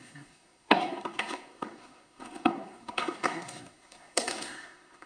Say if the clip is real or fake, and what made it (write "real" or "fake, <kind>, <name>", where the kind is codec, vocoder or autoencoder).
fake, codec, SNAC